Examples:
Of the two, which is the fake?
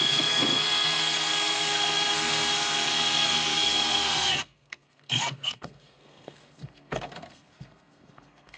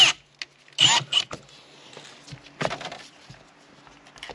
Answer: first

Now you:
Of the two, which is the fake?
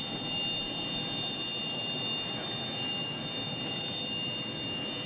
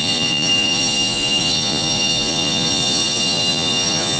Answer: second